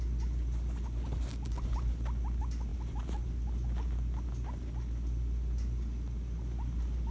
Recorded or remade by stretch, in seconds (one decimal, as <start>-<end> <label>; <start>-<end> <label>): 0.0-7.1 recorded